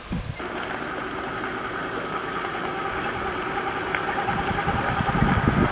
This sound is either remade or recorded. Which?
recorded